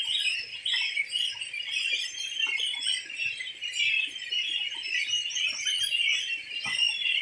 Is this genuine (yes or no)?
no